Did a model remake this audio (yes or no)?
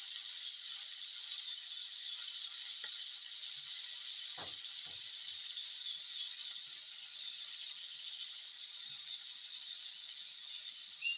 no